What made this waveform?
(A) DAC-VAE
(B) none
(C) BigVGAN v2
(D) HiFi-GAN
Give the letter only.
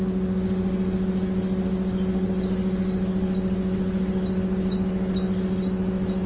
B